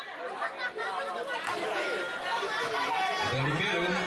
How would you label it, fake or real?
fake